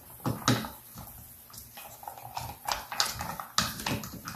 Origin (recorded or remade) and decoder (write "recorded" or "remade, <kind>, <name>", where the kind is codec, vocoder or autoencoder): recorded